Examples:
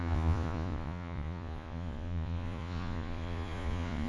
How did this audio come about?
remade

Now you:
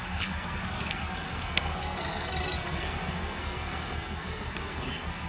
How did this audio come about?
remade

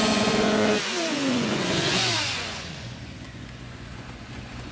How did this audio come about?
remade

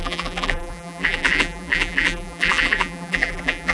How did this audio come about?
remade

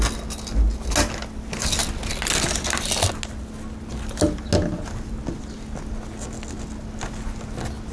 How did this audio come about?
recorded